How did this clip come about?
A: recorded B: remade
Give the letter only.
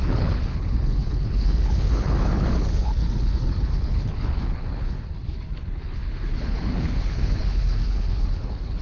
B